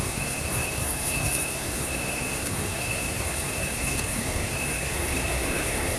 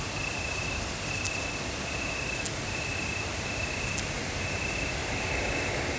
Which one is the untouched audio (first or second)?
second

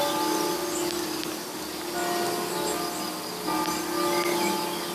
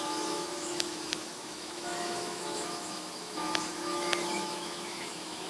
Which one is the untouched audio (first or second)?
first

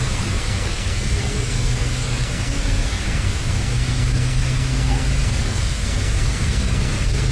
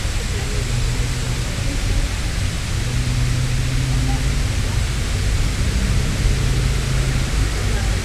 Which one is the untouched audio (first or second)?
second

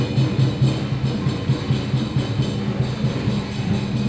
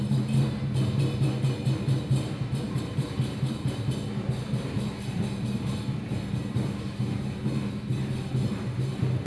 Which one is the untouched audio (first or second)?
first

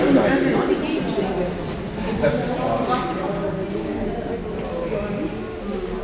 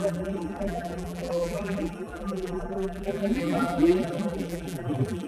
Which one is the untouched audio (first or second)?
first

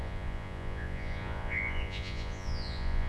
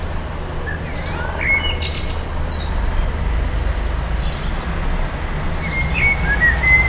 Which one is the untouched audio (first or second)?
second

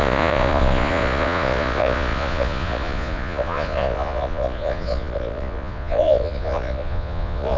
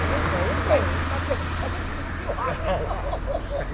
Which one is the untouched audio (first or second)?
second